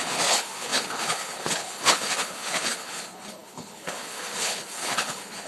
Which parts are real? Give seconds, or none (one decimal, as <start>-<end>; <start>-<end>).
none